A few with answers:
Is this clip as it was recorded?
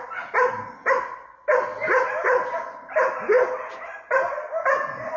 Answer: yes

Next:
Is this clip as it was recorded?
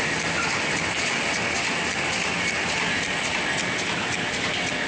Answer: yes